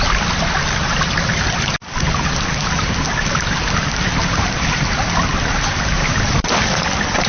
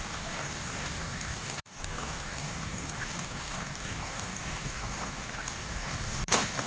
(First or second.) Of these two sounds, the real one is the first